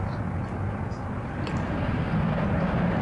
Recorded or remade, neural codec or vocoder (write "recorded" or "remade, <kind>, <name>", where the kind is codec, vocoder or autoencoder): recorded